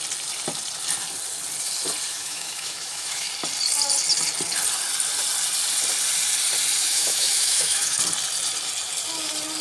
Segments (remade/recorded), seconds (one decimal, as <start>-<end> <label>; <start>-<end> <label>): 0.0-2.1 recorded; 2.1-3.3 remade; 3.3-6.8 recorded; 6.8-8.0 remade; 8.0-9.6 recorded

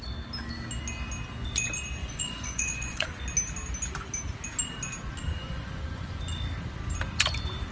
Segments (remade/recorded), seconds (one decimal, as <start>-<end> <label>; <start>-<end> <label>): 0.0-2.0 recorded; 2.0-3.2 remade; 3.2-5.3 recorded; 5.3-6.2 remade; 6.2-7.7 recorded

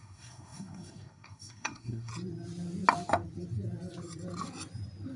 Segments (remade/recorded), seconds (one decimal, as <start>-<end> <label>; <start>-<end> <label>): 0.0-2.1 remade; 2.1-5.2 recorded

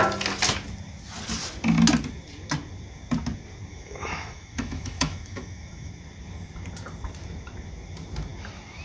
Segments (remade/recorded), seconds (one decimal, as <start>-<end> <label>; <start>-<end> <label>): 0.0-3.7 recorded; 3.7-5.9 remade; 5.9-8.8 recorded

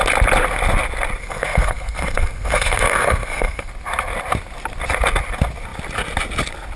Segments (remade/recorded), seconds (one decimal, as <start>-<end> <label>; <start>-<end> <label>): 0.0-1.2 recorded; 1.2-3.7 remade; 3.7-6.8 recorded

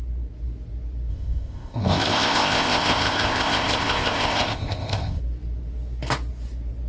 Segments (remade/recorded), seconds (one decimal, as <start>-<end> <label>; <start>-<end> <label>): 0.0-1.1 recorded; 1.1-5.2 remade; 5.2-6.9 recorded

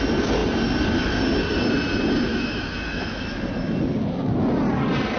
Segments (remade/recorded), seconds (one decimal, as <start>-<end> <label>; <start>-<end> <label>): 0.0-2.3 recorded; 2.3-3.4 remade; 3.4-5.2 recorded

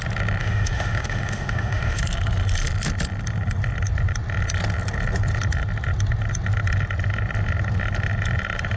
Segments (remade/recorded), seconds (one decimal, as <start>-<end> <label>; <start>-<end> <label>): 0.0-0.4 recorded; 0.4-2.0 remade; 2.0-8.8 recorded